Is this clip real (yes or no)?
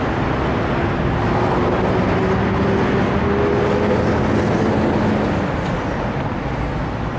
yes